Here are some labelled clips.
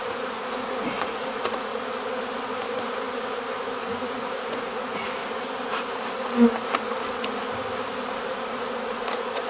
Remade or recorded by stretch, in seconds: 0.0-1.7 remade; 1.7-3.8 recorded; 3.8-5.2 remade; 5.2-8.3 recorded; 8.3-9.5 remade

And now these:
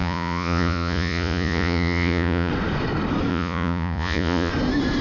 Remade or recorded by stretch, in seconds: 0.0-2.5 remade; 2.5-3.3 recorded; 3.3-4.5 remade; 4.5-5.0 recorded

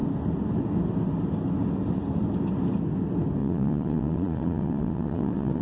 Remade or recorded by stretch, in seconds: 0.0-3.4 recorded; 3.4-5.6 remade

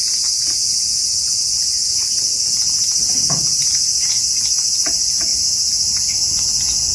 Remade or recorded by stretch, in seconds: 0.0-5.3 remade; 5.3-6.3 recorded; 6.3-6.9 remade

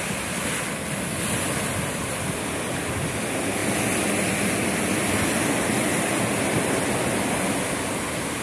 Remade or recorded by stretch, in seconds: 0.0-8.4 recorded